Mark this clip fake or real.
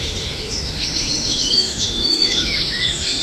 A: fake